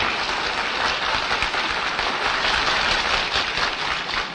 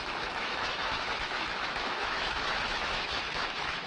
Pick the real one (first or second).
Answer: first